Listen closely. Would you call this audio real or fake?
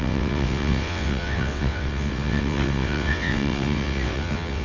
fake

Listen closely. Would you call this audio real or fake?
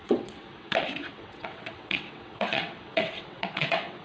fake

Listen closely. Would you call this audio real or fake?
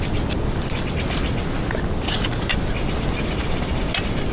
real